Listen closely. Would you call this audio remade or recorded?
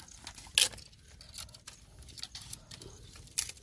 recorded